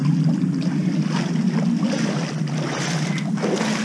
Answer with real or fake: real